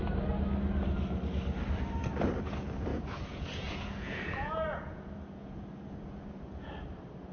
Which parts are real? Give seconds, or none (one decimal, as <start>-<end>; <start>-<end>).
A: 0.0-2.9; 6.7-7.3